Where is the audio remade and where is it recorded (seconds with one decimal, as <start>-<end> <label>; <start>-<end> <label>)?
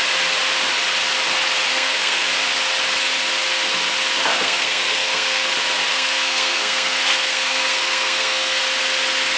0.0-1.7 recorded; 1.7-2.3 remade; 2.3-4.3 recorded; 4.3-5.5 remade; 5.5-5.9 recorded; 5.9-8.6 remade; 8.6-9.4 recorded